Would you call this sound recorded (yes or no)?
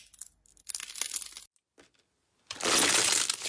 yes